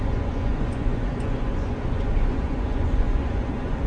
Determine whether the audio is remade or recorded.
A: remade